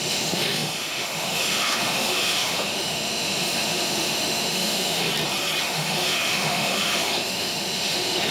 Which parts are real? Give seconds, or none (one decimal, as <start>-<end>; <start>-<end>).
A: 5.1-5.6